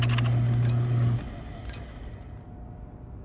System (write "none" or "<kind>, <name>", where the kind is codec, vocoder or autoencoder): none